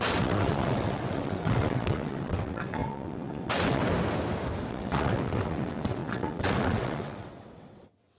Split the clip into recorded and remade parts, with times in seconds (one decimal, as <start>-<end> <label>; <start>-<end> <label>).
0.0-3.8 remade; 3.8-4.7 recorded; 4.7-8.2 remade